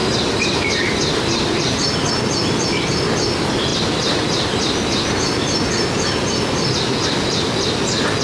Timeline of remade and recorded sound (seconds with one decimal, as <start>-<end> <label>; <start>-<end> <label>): 0.0-2.1 remade; 2.1-3.7 recorded; 3.7-5.7 remade; 5.7-8.2 recorded